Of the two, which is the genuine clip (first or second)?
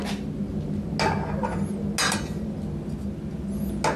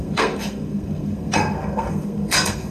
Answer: first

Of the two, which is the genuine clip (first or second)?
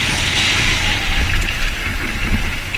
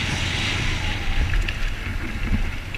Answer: second